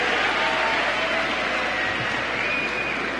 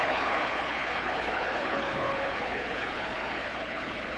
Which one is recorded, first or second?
first